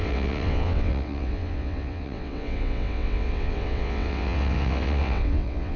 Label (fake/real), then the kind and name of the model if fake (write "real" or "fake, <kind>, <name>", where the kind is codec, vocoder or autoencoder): fake, vocoder, WaveNeXt